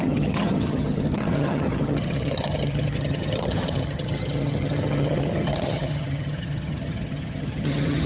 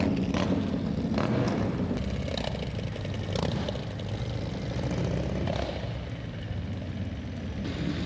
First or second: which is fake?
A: first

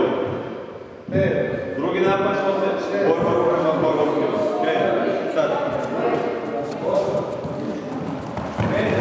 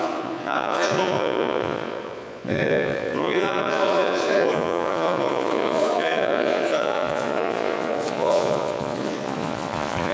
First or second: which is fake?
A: second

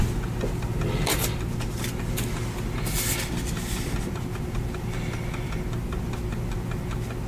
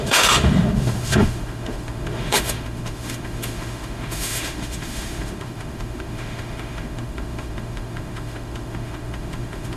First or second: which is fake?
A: second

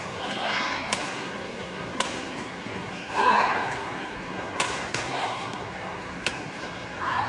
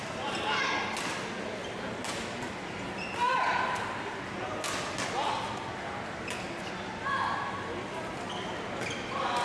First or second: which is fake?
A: first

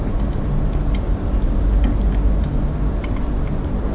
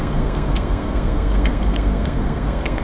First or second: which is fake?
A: second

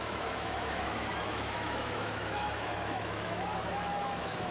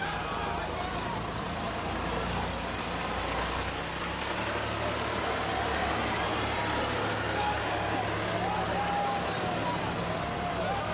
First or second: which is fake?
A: first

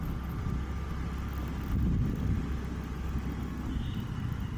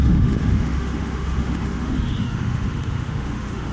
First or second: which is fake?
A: second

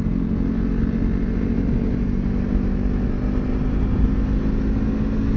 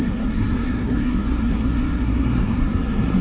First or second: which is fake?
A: second